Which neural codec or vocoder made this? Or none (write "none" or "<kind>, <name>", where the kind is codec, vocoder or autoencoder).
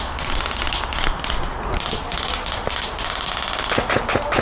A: none